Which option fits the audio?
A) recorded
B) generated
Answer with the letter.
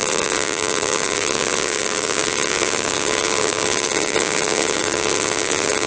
B